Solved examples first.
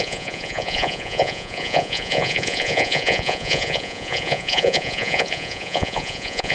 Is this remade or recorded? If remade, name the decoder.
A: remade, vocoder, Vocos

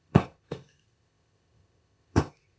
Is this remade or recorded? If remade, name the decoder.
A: remade, codec, ZipCodec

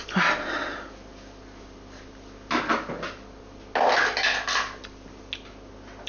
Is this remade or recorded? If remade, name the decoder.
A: recorded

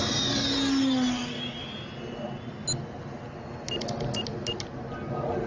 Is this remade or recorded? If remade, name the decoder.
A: recorded